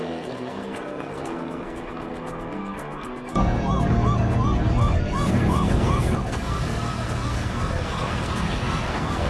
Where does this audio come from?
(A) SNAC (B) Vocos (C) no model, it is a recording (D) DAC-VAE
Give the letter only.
A